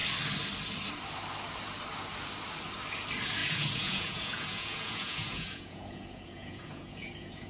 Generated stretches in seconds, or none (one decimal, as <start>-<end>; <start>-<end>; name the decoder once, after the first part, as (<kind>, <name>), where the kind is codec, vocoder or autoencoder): 3.4-7.5 (vocoder, Vocos)